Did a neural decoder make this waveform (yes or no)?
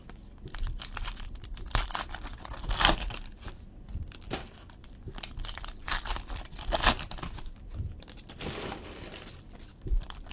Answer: yes